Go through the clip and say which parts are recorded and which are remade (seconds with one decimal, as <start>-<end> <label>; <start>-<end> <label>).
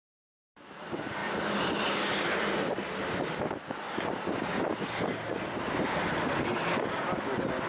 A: 0.0-7.7 recorded